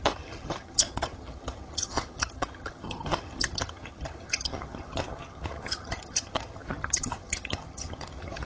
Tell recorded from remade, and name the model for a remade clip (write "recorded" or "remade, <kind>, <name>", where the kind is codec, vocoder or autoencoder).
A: remade, vocoder, HiFi-GAN